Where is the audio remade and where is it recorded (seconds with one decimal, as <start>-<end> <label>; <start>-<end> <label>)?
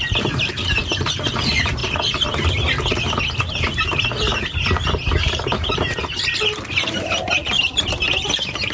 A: 0.0-1.8 remade; 1.8-3.5 recorded; 3.5-4.3 remade; 4.3-5.2 recorded; 5.2-6.0 remade; 6.0-6.7 recorded; 6.7-8.7 remade